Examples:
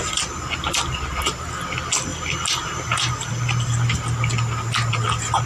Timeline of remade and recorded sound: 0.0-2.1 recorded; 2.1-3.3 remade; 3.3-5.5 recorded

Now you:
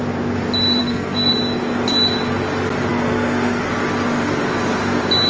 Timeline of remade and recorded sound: 0.0-0.8 recorded; 0.8-1.3 remade; 1.3-2.9 recorded; 2.9-3.7 remade; 3.7-5.3 recorded

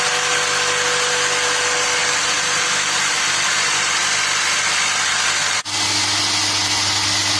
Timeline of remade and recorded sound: 0.0-7.4 recorded

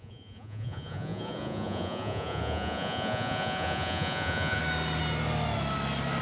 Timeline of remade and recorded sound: 0.0-4.6 remade; 4.6-6.2 recorded

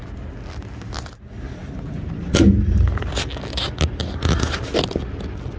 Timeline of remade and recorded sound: 0.0-5.6 recorded

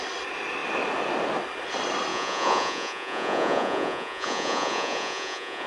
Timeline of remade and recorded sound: 0.0-2.1 recorded; 2.1-5.7 remade